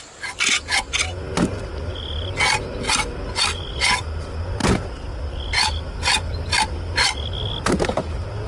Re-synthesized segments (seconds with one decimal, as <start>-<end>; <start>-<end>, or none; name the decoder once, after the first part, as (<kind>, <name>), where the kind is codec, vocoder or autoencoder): none